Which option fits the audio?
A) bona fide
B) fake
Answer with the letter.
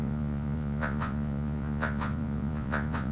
B